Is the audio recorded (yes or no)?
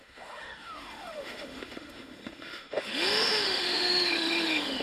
no